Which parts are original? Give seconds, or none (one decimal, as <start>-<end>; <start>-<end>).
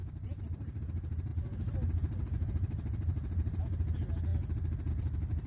0.8-1.3; 3.6-5.5